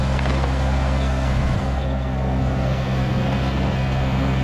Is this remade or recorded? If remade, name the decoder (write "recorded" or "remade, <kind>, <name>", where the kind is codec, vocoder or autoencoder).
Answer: remade, codec, SNAC